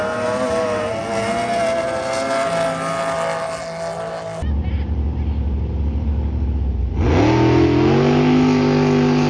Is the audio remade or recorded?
recorded